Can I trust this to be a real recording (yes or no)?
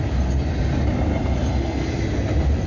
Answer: yes